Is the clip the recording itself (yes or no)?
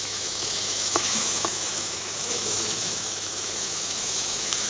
no